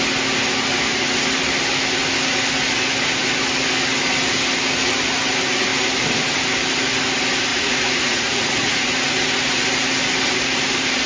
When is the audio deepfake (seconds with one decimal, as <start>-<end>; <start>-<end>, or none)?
7.5-8.9